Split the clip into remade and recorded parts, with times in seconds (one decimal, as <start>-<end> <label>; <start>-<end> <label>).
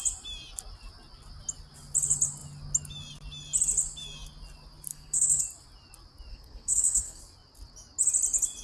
0.0-4.9 recorded; 4.9-5.4 remade; 5.4-6.3 recorded; 6.3-7.2 remade; 7.2-8.6 recorded